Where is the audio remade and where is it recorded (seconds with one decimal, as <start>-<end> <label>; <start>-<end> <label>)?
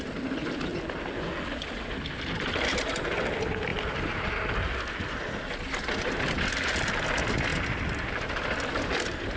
0.0-3.7 recorded; 3.7-4.3 remade; 4.3-7.5 recorded; 7.5-9.4 remade